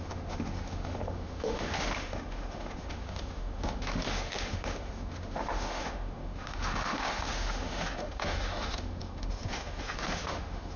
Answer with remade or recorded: remade